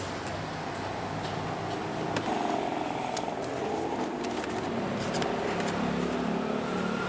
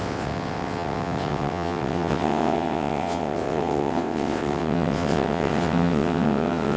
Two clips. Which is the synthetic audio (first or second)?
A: second